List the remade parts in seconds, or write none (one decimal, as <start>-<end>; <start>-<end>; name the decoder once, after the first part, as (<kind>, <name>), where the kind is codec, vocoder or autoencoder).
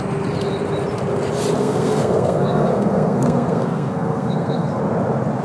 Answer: 1.6-4.8 (codec, SNAC)